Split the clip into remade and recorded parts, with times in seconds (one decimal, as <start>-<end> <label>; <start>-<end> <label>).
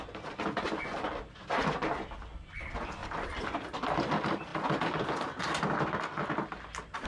0.0-4.5 recorded; 4.5-5.0 remade; 5.0-7.1 recorded